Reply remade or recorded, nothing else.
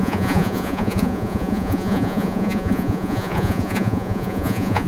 remade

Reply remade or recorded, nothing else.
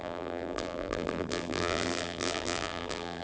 remade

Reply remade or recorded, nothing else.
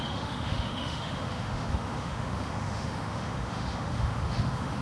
remade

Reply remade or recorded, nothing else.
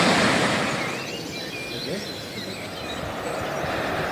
recorded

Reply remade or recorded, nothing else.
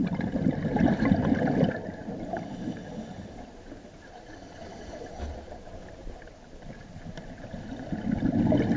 recorded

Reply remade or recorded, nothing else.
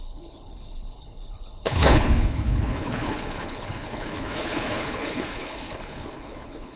remade